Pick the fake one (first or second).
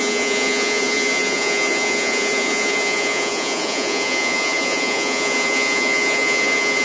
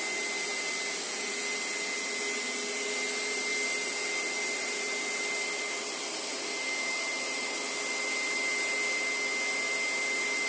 first